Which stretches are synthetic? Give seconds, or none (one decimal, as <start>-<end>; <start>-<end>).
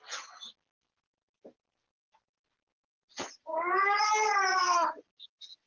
3.1-4.0; 4.5-5.0